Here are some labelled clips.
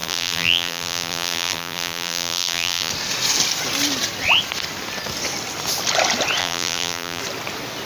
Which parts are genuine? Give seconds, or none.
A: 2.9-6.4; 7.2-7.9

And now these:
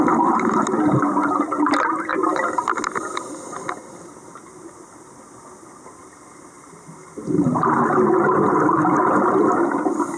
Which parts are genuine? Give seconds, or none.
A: 0.0-10.2